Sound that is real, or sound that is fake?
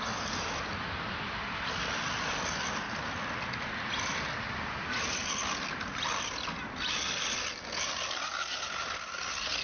real